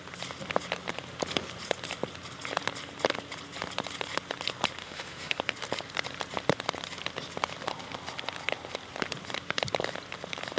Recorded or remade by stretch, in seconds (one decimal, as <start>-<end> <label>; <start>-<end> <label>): 0.0-4.8 recorded; 4.8-5.4 remade; 5.4-10.6 recorded